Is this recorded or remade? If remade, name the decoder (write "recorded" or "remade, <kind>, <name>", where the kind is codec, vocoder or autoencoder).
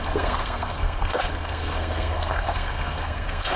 remade, codec, SNAC